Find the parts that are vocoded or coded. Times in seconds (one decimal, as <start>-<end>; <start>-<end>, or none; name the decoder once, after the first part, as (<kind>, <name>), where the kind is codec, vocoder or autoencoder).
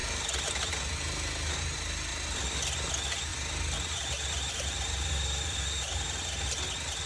none